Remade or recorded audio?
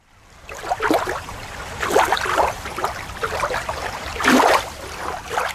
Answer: remade